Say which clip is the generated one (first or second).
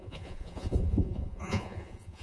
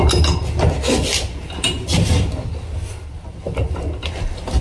first